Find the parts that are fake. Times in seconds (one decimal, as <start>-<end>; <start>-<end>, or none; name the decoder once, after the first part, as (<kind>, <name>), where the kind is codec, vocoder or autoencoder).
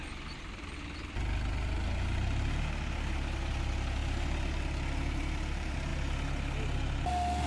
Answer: none